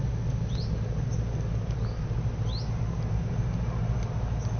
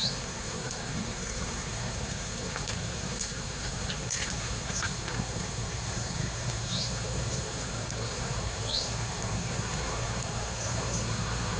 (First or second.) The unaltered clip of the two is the first